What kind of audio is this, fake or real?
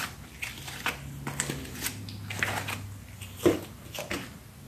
real